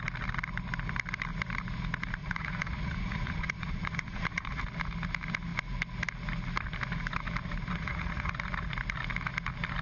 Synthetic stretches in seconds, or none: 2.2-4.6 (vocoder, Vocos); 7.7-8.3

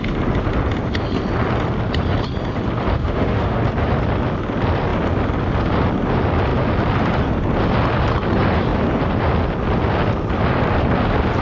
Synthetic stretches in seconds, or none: 2.9-3.6 (autoencoder, DAC-VAE)

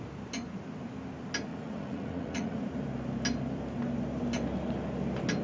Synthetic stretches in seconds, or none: 1.5-2.6 (vocoder, Vocos)

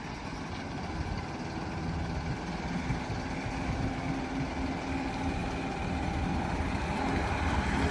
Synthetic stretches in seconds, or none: 1.8-3.1 (vocoder, BigVGAN v2)

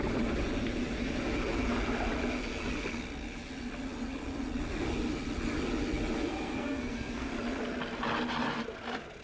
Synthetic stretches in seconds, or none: 6.3-7.3 (codec, SNAC)

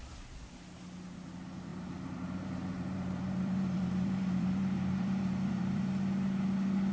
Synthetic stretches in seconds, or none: 1.7-5.8 (vocoder, BigVGAN v2)